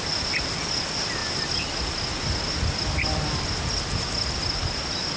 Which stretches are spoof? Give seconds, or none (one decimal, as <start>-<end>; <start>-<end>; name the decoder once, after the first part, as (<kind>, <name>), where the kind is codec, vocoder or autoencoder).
none